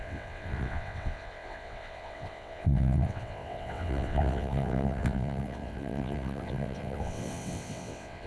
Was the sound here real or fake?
fake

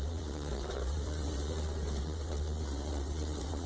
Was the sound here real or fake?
fake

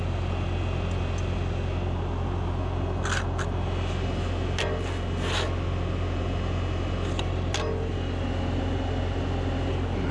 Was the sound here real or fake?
real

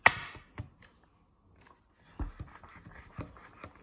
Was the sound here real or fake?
real